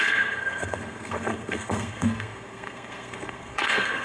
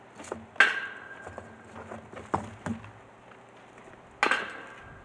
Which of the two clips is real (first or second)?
second